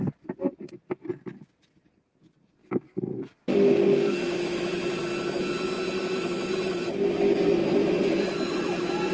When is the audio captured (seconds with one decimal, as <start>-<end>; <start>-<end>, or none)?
0.0-7.6